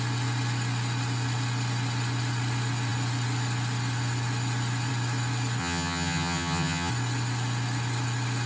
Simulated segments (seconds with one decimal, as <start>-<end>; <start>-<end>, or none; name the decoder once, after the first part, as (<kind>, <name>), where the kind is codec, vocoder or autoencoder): 5.6-6.9 (vocoder, HiFi-GAN)